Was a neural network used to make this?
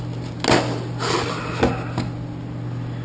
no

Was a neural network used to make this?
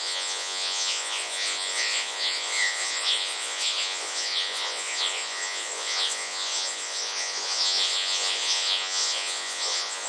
yes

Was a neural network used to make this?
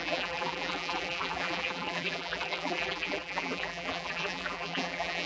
yes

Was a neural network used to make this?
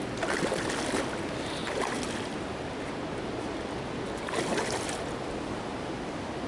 no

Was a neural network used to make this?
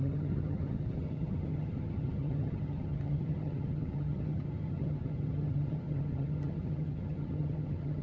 yes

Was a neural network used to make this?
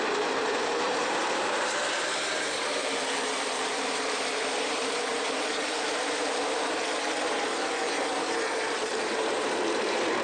yes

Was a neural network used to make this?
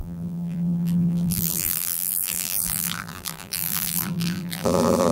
yes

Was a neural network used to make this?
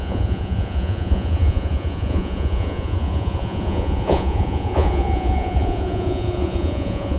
yes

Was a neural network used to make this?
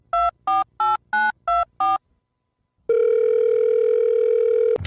no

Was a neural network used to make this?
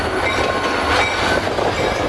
no